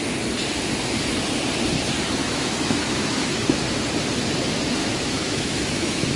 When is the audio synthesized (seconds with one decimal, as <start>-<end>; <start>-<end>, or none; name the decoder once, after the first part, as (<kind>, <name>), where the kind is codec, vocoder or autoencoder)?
2.2-3.8 (autoencoder, DAC-VAE); 4.8-6.2